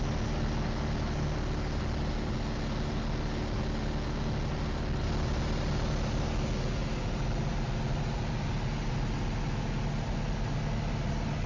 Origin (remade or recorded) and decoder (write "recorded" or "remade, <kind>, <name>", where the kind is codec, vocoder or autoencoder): recorded